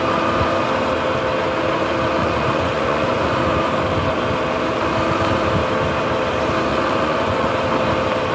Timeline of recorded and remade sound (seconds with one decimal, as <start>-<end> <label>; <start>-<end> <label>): 0.0-2.2 recorded; 2.2-3.5 remade; 3.5-6.7 recorded; 6.7-7.5 remade; 7.5-8.3 recorded